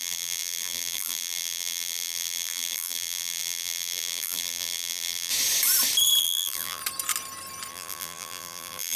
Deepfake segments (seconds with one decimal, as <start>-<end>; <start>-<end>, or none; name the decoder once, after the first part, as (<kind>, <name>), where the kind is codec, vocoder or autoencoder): 0.0-5.3 (vocoder, BigVGAN v2); 6.2-6.8; 7.7-9.0